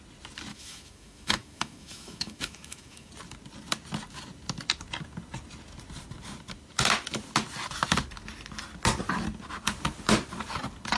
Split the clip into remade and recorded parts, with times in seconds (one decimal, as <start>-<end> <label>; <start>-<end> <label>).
0.0-0.5 recorded; 0.5-3.1 remade; 3.1-11.0 recorded